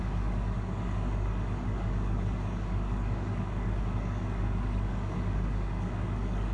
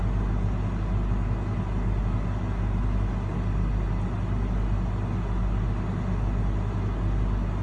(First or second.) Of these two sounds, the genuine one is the second